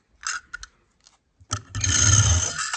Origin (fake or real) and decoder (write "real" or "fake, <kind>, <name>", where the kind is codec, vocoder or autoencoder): real